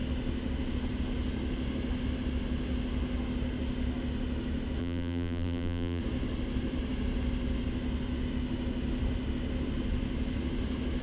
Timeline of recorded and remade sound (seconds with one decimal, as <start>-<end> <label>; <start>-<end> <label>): 0.0-4.8 recorded; 4.8-6.0 remade; 6.0-11.0 recorded